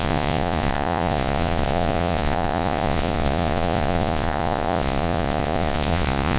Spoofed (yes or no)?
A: yes